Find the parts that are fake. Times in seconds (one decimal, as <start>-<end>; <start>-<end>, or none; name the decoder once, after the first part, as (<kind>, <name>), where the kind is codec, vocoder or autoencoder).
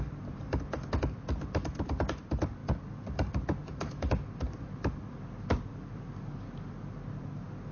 none